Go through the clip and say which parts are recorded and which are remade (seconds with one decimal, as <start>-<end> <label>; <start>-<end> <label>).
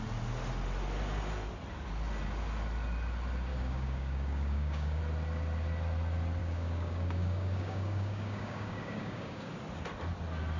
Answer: 0.0-3.5 recorded; 3.5-5.0 remade; 5.0-6.4 recorded; 6.4-9.5 remade; 9.5-10.6 recorded